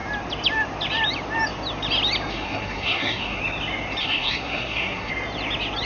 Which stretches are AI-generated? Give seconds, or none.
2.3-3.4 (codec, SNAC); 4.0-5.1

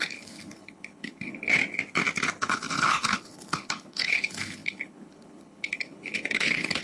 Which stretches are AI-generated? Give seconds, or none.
0.0-1.6 (codec, HILCodec); 2.4-6.8